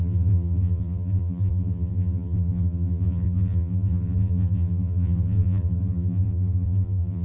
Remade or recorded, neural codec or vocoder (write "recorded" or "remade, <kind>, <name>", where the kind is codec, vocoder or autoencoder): remade, vocoder, BigVGAN v2